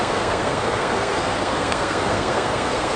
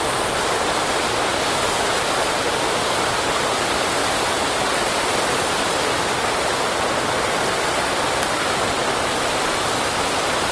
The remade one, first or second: first